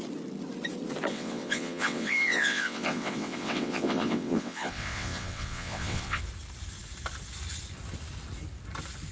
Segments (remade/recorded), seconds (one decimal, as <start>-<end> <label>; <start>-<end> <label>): 0.0-1.1 recorded; 1.1-6.2 remade; 6.2-9.1 recorded